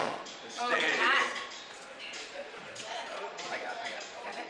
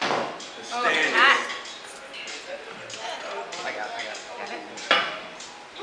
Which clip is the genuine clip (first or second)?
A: second